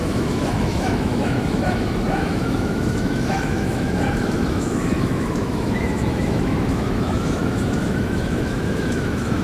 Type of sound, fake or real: fake